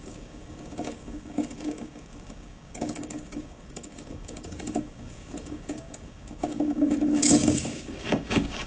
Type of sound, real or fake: fake